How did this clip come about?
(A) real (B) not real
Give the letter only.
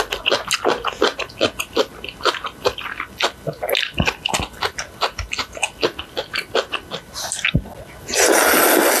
A